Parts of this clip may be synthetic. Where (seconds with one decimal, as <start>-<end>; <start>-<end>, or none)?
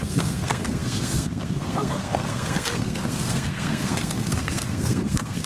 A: 0.0-5.5